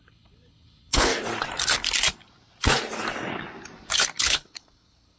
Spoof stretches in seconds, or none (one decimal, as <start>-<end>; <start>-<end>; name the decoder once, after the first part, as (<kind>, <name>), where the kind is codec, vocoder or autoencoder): 0.0-1.1 (codec, HILCodec); 4.2-5.2